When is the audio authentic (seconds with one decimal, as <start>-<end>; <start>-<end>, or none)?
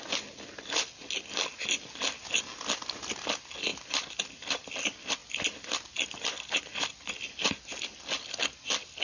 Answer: 0.0-3.7; 4.2-5.2; 7.5-9.0